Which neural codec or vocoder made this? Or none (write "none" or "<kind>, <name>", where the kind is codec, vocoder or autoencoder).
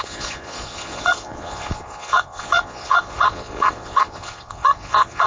vocoder, Vocos